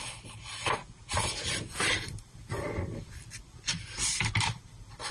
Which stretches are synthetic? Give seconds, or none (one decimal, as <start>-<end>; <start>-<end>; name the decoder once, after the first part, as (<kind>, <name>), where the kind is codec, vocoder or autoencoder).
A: 0.0-0.8 (vocoder, BigVGAN v2); 1.5-5.1